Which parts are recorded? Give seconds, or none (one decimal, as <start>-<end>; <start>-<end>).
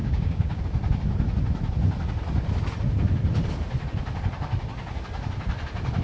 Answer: 0.6-6.0